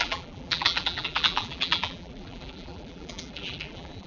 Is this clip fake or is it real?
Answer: fake